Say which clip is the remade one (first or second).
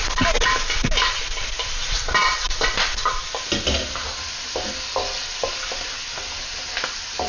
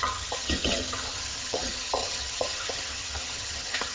second